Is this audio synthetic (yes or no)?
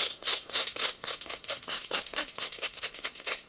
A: yes